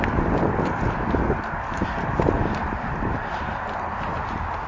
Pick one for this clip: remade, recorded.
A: remade